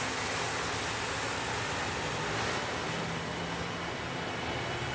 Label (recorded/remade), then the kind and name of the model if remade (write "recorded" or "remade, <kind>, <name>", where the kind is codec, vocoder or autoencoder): recorded